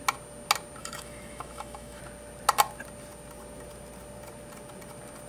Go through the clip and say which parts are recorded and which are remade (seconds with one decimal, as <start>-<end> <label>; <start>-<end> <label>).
0.0-0.8 recorded; 0.8-2.0 remade; 2.0-5.3 recorded